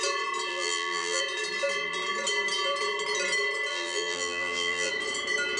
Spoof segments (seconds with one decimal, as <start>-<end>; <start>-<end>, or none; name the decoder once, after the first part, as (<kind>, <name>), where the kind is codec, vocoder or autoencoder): 0.5-1.2 (vocoder, BigVGAN v2); 3.7-4.9